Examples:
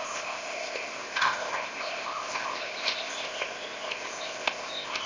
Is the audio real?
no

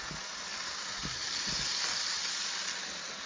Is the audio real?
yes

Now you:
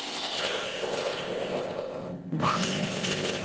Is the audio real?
no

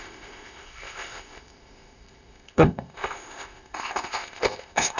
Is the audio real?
no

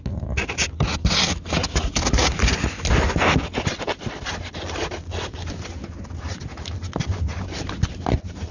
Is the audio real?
yes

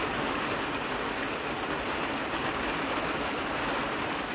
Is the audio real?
yes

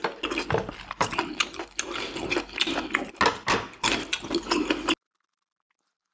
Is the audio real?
yes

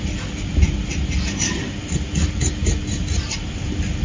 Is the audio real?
yes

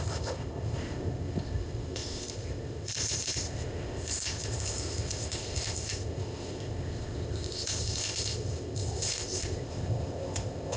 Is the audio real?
no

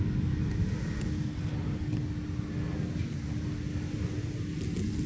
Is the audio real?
yes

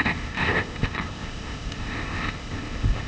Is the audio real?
no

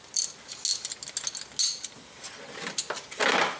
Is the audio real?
yes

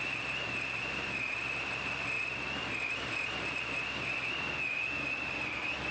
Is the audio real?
yes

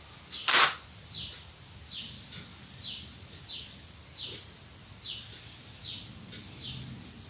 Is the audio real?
yes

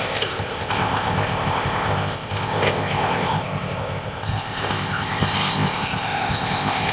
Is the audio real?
no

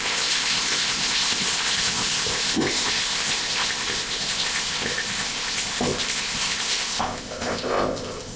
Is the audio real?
no